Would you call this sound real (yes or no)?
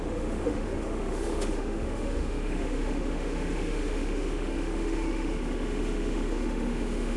no